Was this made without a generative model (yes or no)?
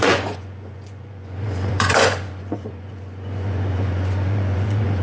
no